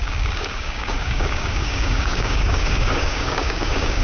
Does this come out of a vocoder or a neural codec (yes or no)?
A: yes